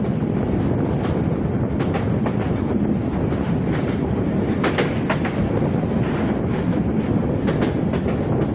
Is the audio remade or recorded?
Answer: recorded